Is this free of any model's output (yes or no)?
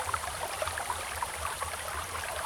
no